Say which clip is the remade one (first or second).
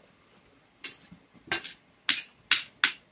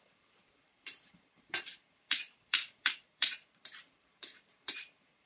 second